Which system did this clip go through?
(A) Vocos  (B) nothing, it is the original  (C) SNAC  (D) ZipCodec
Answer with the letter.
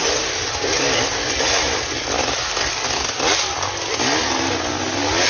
B